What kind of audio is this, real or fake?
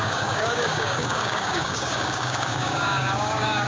fake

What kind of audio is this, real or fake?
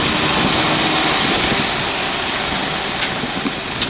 real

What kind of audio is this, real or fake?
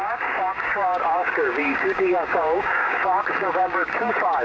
fake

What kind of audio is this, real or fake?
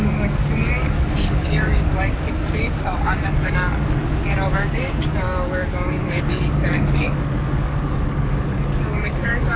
fake